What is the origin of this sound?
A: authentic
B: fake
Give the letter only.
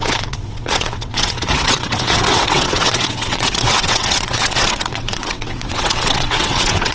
B